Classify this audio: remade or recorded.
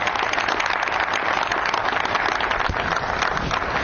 recorded